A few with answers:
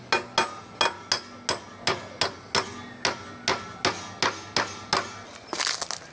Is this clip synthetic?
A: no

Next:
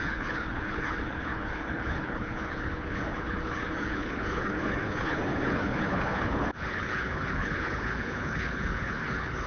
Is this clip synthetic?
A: yes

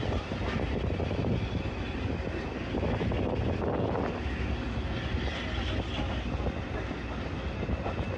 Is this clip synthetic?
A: no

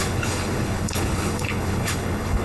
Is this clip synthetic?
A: yes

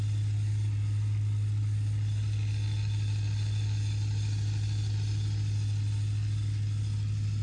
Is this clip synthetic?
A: no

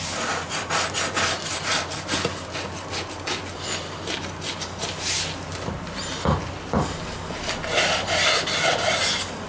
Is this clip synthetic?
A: no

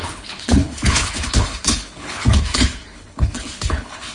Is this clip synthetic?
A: yes